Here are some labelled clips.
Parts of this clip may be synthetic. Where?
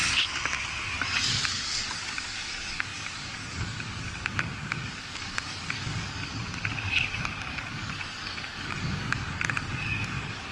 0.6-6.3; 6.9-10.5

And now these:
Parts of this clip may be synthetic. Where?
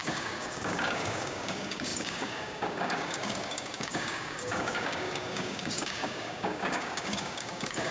0.0-7.9